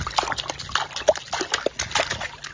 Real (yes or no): yes